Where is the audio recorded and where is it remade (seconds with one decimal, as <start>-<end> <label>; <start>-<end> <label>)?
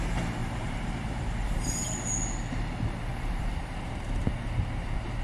0.0-0.4 recorded; 0.4-1.8 remade; 1.8-3.1 recorded; 3.1-5.2 remade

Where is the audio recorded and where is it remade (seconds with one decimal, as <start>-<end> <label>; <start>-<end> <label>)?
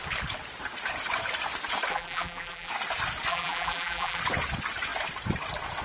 0.0-1.9 recorded; 1.9-2.7 remade; 2.7-3.3 recorded; 3.3-4.2 remade; 4.2-5.8 recorded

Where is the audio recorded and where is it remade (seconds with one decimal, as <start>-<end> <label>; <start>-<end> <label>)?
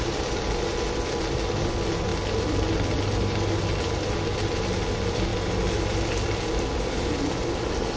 0.0-2.1 remade; 2.1-3.7 recorded; 3.7-5.3 remade; 5.3-5.9 recorded; 5.9-8.0 remade